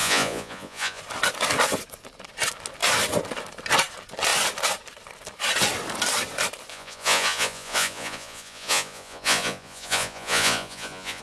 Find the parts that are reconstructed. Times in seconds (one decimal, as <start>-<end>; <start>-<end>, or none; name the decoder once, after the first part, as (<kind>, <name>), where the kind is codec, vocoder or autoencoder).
0.0-1.0 (vocoder, Vocos); 6.7-11.2